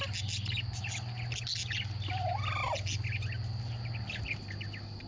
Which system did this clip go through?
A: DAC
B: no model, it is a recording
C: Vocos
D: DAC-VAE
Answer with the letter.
B